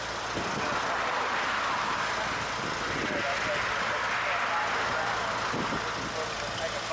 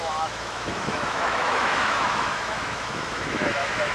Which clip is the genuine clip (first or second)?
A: first